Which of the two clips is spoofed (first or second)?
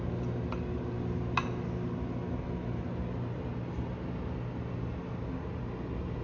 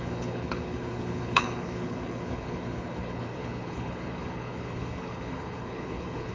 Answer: second